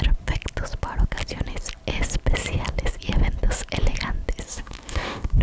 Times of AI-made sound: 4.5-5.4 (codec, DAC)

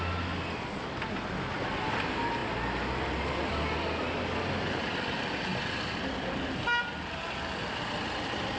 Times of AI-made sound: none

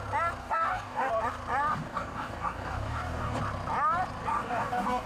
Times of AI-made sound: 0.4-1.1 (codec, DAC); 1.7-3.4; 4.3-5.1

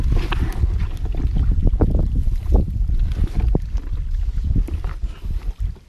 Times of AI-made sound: none